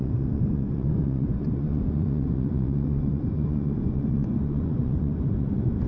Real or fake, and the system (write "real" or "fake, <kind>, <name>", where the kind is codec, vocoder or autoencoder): fake, vocoder, Vocos